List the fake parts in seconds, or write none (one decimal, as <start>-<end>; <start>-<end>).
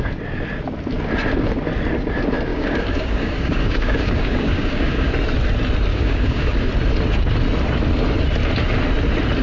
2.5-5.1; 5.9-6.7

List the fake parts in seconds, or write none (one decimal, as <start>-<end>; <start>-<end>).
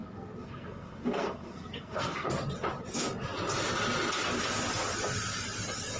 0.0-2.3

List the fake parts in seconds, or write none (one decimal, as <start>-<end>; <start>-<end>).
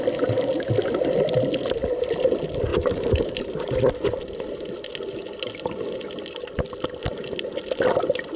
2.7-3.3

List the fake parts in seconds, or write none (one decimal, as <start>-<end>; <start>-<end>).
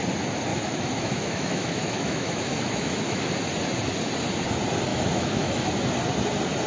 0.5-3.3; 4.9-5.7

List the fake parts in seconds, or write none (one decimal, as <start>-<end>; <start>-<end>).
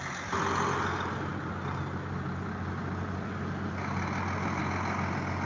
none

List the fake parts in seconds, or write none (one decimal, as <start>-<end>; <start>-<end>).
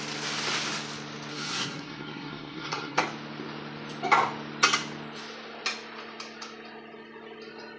1.3-3.0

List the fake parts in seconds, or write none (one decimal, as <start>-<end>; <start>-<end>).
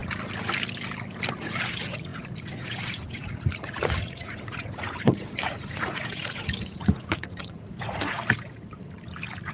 1.4-8.2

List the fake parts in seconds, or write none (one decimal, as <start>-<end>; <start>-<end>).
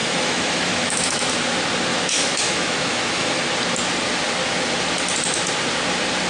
0.0-1.3; 1.9-3.4